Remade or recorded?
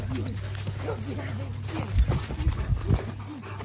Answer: recorded